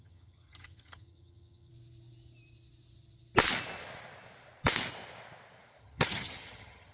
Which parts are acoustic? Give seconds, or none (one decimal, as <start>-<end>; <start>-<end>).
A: 1.7-5.8